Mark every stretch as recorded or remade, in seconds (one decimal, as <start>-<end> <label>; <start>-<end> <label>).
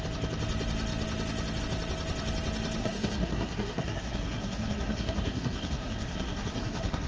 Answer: 0.0-2.8 recorded; 2.8-7.1 remade